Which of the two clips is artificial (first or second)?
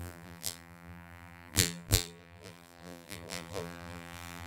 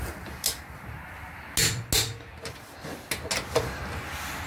first